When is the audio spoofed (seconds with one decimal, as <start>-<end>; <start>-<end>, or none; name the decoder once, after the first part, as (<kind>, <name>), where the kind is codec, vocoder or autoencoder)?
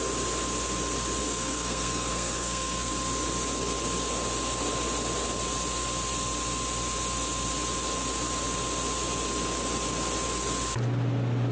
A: 1.2-2.9 (codec, SNAC)